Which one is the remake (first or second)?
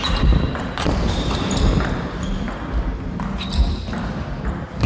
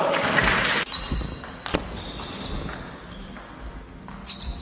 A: first